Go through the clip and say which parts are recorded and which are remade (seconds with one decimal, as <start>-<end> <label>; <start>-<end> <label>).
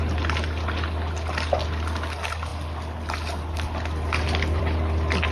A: 0.0-5.3 recorded